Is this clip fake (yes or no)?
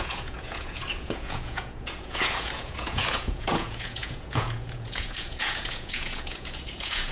yes